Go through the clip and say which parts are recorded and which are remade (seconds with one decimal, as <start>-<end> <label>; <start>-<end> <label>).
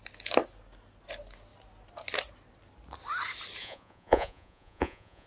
0.0-3.6 recorded; 3.6-5.3 remade